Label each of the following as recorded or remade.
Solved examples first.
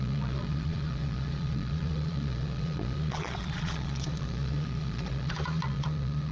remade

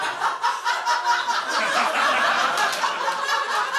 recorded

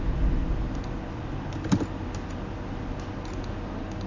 recorded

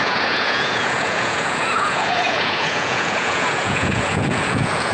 remade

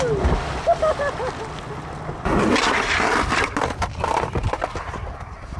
recorded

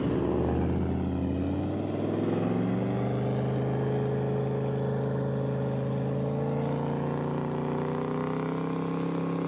recorded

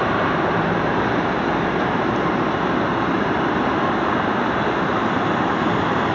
remade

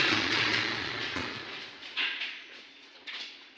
remade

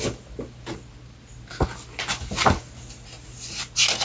recorded